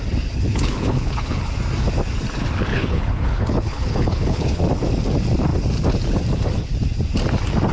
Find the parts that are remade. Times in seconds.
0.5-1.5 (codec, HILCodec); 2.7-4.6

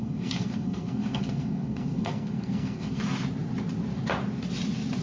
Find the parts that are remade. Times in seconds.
0.0-3.0 (codec, SNAC)

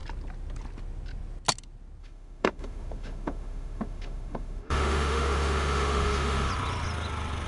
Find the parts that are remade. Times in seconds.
2.0-6.5 (autoencoder, DAC-VAE)